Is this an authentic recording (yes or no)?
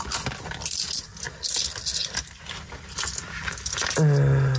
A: yes